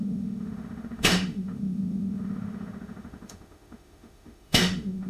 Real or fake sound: fake